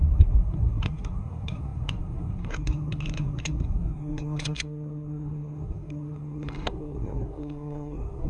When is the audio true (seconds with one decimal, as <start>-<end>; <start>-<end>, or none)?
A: none